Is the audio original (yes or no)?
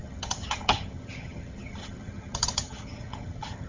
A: no